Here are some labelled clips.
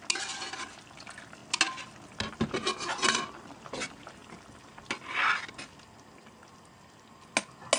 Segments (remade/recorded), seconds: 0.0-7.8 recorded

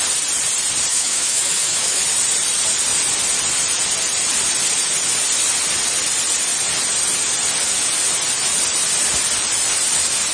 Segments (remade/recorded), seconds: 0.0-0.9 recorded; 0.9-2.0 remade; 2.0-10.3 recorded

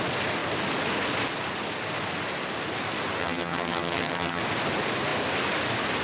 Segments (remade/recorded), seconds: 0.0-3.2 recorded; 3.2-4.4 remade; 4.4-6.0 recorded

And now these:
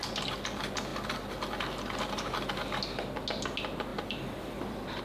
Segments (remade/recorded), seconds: 0.0-3.9 recorded; 3.9-5.0 remade